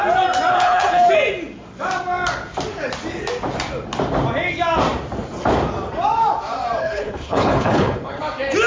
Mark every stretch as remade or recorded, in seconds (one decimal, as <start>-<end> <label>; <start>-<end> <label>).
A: 0.0-0.5 recorded; 0.5-1.1 remade; 1.1-6.8 recorded; 6.8-8.2 remade; 8.2-8.7 recorded